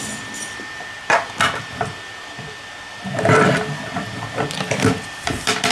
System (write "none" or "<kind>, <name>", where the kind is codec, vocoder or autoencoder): vocoder, BigVGAN v2